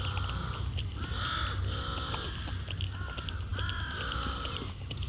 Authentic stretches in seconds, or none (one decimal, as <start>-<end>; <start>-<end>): 0.0-5.1